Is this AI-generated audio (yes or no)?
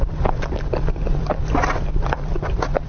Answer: yes